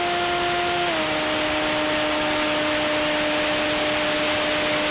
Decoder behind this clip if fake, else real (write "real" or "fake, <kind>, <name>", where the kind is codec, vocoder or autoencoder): real